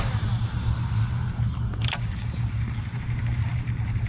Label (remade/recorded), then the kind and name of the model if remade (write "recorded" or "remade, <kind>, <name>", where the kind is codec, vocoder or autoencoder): remade, vocoder, BigVGAN v2